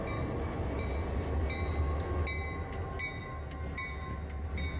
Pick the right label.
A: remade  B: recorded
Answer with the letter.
B